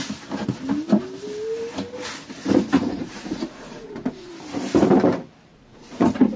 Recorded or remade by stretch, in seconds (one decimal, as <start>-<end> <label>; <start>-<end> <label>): 0.0-2.8 recorded; 2.8-4.3 remade; 4.3-5.5 recorded; 5.5-6.4 remade